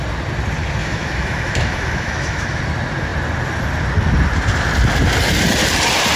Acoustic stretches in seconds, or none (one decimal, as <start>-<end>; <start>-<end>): 0.0-0.8; 2.6-6.2